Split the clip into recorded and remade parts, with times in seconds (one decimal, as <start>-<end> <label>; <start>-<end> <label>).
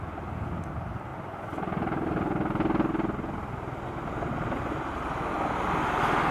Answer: 0.0-6.3 recorded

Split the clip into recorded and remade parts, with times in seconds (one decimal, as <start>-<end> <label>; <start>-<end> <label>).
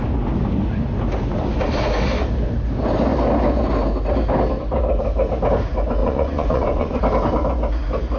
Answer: 0.0-6.0 recorded; 6.0-7.0 remade; 7.0-8.2 recorded